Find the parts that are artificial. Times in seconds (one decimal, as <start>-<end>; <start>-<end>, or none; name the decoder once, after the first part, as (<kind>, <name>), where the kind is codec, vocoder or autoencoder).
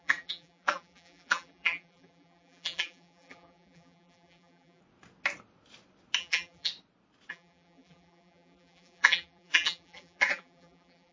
0.0-4.8 (vocoder, BigVGAN v2); 6.2-6.7; 7.3-11.1